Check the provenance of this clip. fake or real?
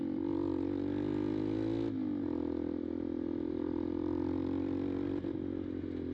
real